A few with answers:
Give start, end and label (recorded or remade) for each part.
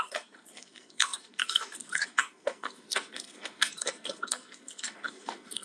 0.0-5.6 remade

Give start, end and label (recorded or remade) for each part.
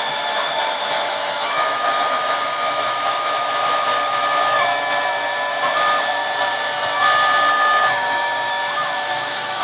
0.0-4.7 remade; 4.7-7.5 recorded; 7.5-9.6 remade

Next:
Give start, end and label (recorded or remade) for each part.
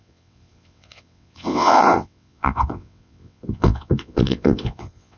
0.0-5.2 remade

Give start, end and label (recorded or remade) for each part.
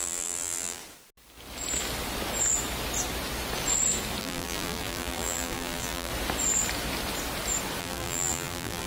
0.0-0.8 remade; 0.8-4.2 recorded; 4.2-6.1 remade; 6.1-7.8 recorded; 7.8-8.9 remade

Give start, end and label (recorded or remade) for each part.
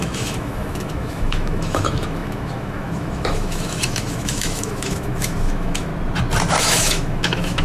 0.0-5.9 remade; 5.9-6.6 recorded; 6.6-7.6 remade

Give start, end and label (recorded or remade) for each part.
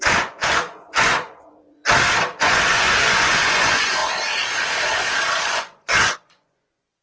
0.0-1.8 remade; 1.8-2.4 recorded; 2.4-4.0 remade; 4.0-5.4 recorded; 5.4-7.0 remade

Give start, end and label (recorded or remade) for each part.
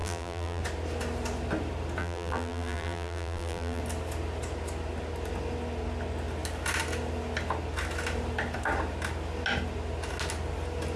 0.0-0.6 remade; 0.6-2.0 recorded; 2.0-3.8 remade; 3.8-11.0 recorded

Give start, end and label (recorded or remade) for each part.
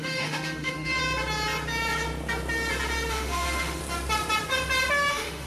0.0-1.0 remade; 1.0-3.1 recorded; 3.1-3.8 remade; 3.8-5.1 recorded; 5.1-5.5 remade